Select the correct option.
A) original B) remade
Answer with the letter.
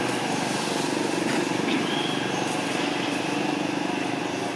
B